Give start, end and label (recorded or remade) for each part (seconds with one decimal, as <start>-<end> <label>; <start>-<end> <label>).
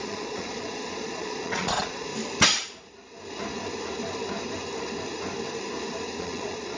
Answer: 0.0-2.1 remade; 2.1-6.2 recorded; 6.2-6.8 remade